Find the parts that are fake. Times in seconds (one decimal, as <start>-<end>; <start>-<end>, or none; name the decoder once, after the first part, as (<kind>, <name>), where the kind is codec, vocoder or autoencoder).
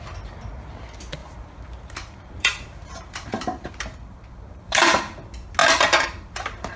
1.2-5.0 (vocoder, BigVGAN v2); 5.6-6.8